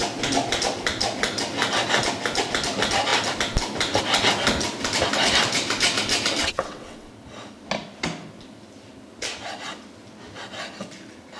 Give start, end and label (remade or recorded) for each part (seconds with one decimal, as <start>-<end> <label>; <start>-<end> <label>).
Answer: 0.0-6.4 recorded; 6.4-7.1 remade; 7.1-11.4 recorded